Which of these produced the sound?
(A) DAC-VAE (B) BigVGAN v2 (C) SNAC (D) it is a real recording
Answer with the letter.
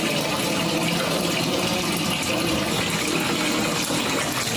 D